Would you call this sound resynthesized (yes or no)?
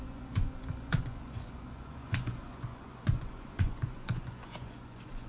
yes